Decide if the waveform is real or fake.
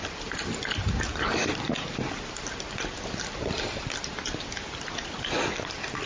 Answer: real